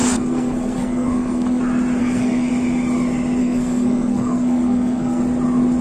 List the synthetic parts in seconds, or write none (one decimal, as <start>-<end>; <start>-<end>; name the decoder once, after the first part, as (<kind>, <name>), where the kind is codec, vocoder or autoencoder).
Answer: 0.0-1.6 (codec, SNAC); 2.0-2.5; 3.4-5.2